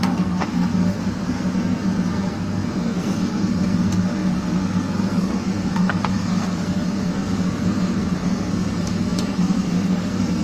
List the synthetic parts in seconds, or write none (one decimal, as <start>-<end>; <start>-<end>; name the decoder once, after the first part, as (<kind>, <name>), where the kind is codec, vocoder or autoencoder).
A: 0.0-10.4 (codec, SNAC)